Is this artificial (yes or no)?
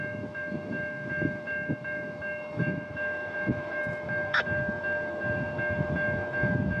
yes